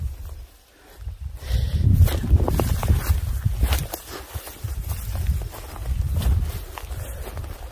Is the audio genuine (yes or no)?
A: yes